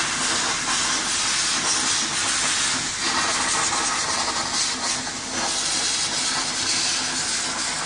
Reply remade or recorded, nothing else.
recorded